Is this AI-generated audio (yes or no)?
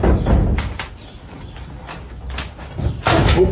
no